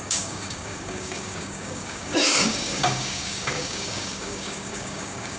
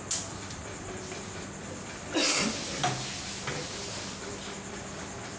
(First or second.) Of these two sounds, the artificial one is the first